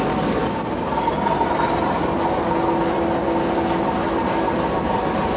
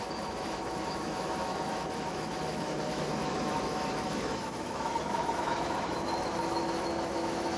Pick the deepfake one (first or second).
second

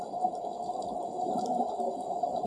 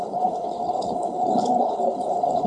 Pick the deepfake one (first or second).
second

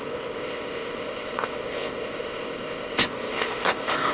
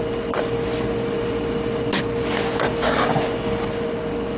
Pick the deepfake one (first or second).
first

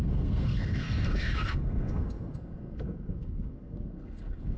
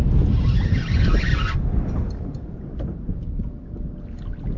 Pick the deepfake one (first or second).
first